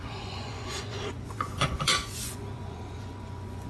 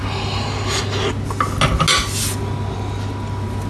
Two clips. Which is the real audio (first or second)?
second